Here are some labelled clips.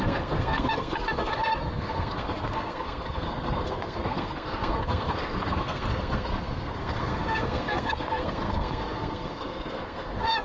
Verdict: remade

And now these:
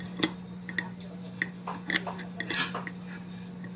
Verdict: recorded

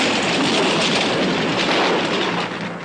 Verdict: recorded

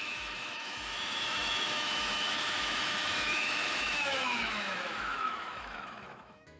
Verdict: remade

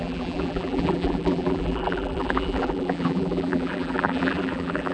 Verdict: remade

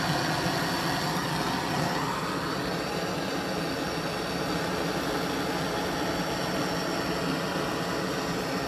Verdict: recorded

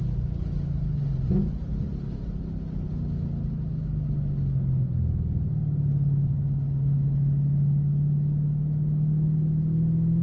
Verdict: recorded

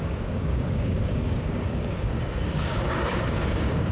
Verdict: remade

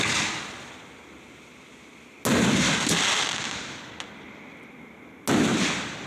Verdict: recorded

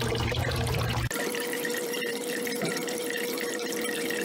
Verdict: remade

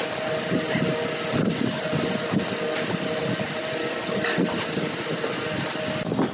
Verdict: recorded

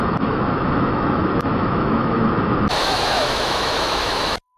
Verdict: remade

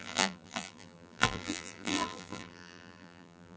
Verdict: remade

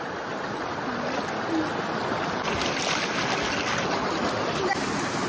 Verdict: recorded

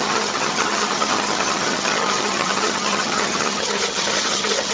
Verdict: remade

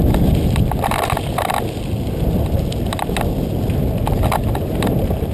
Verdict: recorded